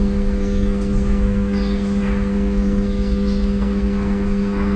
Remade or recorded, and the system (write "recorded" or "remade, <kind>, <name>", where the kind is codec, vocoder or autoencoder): remade, codec, SNAC